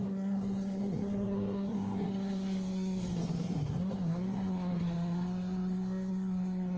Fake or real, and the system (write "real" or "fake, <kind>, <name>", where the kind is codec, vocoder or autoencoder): fake, codec, SNAC